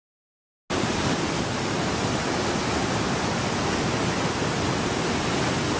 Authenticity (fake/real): real